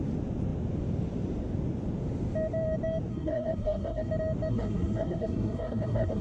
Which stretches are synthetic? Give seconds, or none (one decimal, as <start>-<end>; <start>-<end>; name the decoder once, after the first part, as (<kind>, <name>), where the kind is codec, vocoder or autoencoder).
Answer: 3.1-4.1 (codec, SNAC); 4.5-6.2